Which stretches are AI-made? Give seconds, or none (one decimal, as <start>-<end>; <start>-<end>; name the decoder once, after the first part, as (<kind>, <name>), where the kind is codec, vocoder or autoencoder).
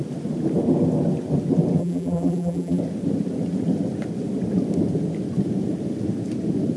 1.8-2.8 (vocoder, BigVGAN v2)